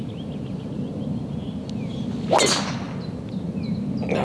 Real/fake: real